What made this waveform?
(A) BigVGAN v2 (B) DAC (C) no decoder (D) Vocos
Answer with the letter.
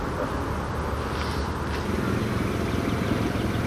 C